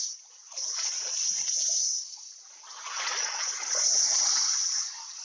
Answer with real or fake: fake